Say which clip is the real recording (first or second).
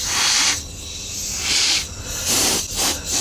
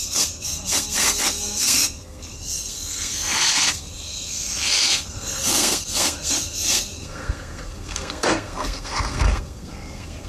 first